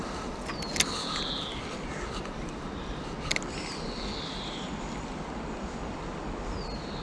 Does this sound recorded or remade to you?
recorded